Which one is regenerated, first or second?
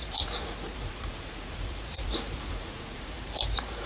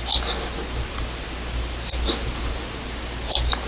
first